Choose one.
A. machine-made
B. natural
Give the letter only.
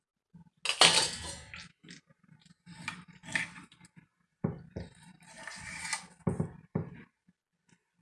B